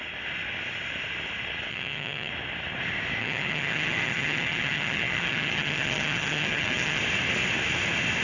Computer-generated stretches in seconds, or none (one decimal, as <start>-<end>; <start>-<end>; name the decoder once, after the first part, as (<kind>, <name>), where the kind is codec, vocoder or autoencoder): 1.7-2.3 (vocoder, HiFi-GAN); 3.2-7.0